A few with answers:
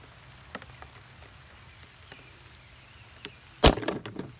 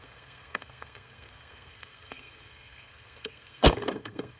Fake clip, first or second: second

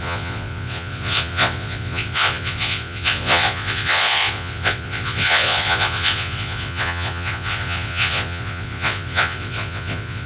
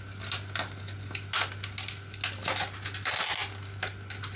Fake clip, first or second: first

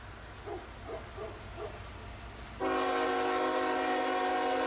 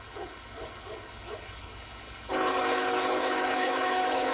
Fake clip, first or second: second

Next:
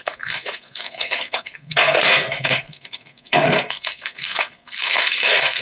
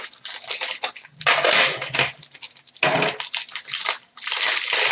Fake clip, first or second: first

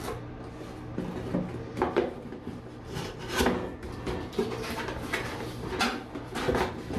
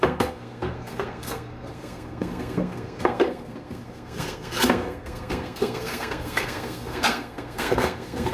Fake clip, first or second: second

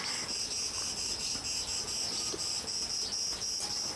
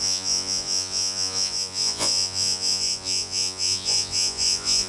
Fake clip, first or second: second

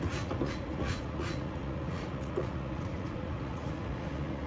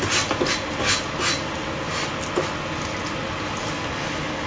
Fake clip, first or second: first